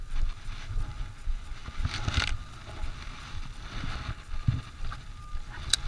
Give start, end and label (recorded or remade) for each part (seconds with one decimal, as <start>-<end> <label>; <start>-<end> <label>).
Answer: 0.0-5.9 recorded